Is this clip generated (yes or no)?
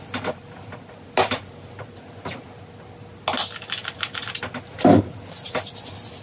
no